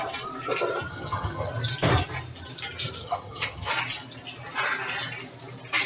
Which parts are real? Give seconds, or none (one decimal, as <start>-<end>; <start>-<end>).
0.0-0.9; 1.5-3.0; 3.7-5.9